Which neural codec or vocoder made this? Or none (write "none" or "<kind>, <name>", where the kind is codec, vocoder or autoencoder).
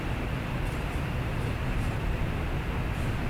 vocoder, BigVGAN v2